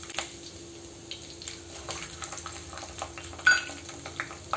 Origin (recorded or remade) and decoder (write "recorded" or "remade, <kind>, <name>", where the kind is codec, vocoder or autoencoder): recorded